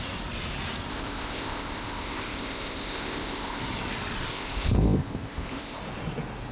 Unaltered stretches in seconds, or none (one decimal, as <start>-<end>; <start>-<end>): 0.0-0.9; 3.6-4.3; 5.8-6.5

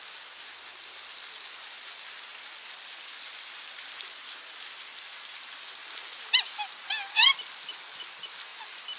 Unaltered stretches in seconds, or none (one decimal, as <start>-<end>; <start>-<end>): 0.0-9.0

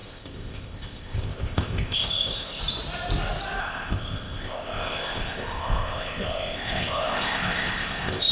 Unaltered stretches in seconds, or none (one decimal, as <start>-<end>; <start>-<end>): 2.6-3.6

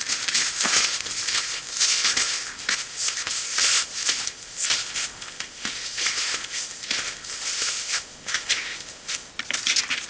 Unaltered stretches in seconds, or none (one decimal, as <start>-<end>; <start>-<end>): 9.3-10.1